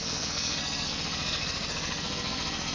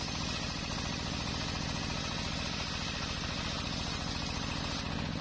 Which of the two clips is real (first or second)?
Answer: second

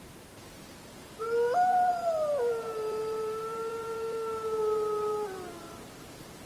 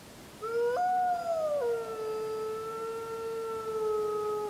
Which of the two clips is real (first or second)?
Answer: second